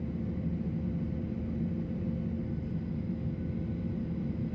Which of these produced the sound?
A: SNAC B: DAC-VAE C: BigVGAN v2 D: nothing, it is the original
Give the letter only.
D